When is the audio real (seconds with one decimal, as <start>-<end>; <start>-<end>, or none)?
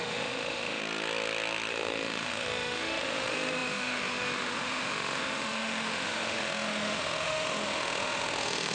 0.8-1.7